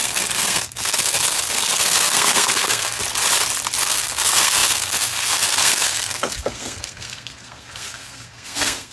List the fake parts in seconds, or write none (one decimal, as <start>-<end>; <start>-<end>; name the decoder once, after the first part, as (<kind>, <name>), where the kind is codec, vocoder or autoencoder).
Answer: 0.0-3.0 (codec, SNAC); 3.8-8.9